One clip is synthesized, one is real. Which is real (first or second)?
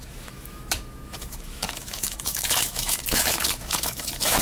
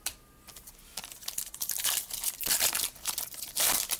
second